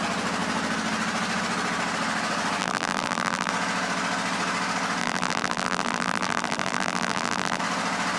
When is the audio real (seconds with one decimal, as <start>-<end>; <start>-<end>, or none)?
0.0-2.6; 3.5-5.0; 7.6-8.2